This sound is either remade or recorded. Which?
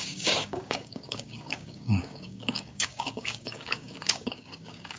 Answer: remade